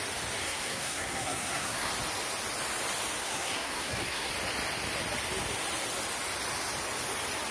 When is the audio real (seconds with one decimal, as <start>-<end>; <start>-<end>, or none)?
0.0-0.4; 1.9-3.2; 4.3-7.5